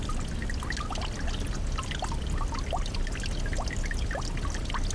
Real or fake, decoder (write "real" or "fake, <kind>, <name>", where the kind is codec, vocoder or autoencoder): real